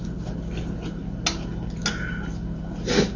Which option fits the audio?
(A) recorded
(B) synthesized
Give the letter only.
A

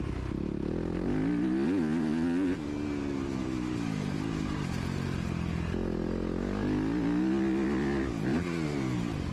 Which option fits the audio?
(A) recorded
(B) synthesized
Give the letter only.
A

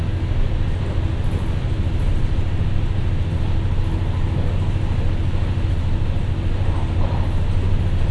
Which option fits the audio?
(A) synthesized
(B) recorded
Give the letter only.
B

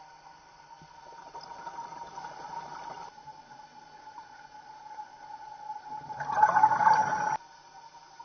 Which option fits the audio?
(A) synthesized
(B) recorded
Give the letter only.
B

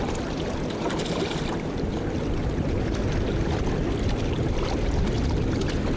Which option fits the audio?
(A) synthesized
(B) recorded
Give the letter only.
B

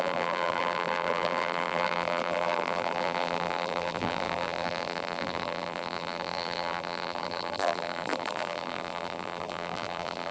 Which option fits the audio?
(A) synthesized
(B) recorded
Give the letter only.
A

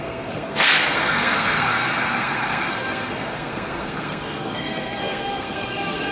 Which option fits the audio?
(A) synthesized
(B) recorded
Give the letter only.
A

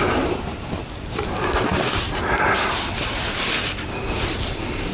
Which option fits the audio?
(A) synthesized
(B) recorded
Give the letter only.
B